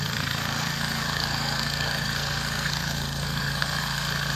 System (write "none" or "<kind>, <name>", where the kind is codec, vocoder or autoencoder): codec, SNAC